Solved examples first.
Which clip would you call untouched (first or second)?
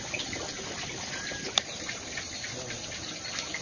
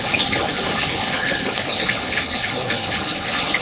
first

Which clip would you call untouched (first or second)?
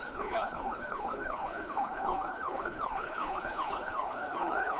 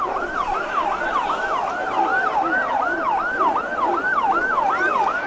second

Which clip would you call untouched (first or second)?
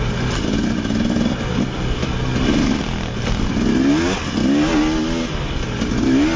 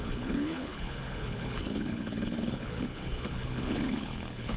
first